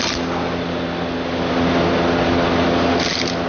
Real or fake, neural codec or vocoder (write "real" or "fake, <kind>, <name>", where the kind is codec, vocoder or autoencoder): real